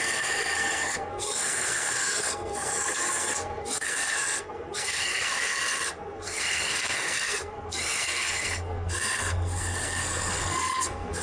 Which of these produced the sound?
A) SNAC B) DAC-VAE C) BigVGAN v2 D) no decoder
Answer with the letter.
A